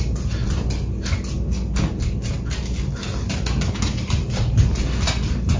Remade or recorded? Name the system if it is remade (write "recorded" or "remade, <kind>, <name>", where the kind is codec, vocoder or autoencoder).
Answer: recorded